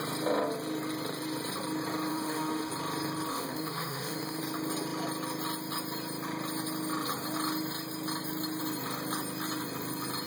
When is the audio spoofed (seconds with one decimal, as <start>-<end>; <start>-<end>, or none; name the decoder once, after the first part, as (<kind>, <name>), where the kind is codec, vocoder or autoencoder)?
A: 2.1-2.7 (autoencoder, DAC-VAE); 3.3-4.4